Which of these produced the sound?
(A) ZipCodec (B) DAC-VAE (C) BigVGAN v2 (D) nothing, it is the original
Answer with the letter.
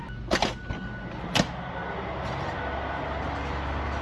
D